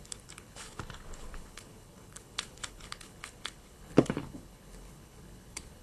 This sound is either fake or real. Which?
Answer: fake